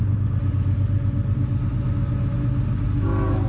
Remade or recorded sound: recorded